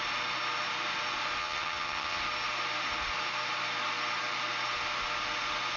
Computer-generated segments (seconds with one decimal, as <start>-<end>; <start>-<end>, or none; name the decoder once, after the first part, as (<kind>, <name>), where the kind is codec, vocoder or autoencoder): 1.4-2.2 (vocoder, HiFi-GAN)